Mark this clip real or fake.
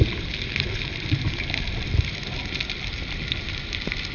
real